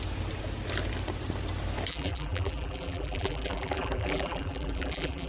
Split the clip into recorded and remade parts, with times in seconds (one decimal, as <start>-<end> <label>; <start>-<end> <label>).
0.0-1.9 recorded; 1.9-5.3 remade